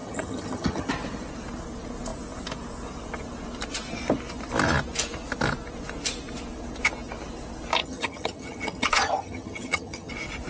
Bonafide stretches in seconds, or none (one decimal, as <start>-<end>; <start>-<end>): 0.9-7.8; 10.1-10.5